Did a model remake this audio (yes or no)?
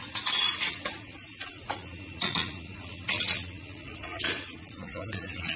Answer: yes